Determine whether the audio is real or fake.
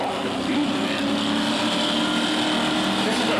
real